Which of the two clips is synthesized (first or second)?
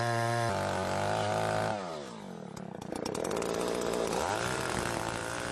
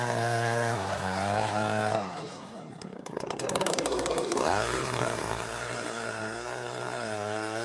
second